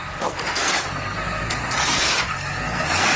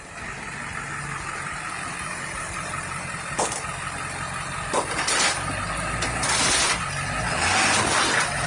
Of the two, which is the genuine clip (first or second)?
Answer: second